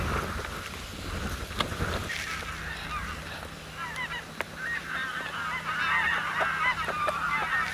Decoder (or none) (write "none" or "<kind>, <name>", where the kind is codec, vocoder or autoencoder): none